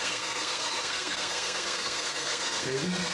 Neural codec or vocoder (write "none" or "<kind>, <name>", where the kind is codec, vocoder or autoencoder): codec, SNAC